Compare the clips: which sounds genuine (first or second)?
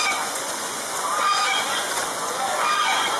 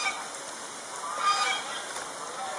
second